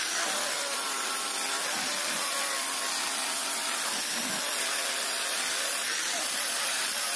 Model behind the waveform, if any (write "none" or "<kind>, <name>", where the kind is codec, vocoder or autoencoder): none